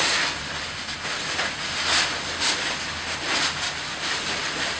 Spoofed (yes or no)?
no